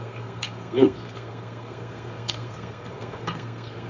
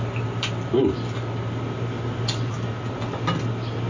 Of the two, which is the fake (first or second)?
first